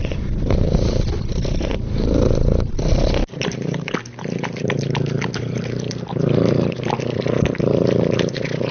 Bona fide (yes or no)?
no